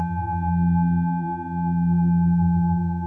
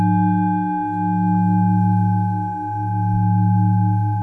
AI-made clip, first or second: first